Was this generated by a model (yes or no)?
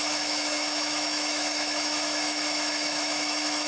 yes